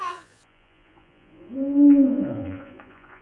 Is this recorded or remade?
remade